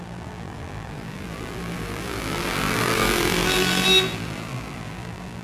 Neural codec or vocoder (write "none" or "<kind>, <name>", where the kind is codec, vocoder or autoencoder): vocoder, BigVGAN v2